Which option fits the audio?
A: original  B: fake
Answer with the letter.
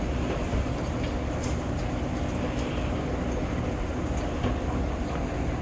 A